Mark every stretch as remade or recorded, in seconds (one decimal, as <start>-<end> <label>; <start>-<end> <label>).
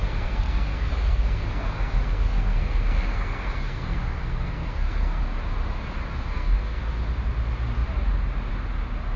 0.0-5.2 remade; 5.2-6.3 recorded; 6.3-6.8 remade; 6.8-9.2 recorded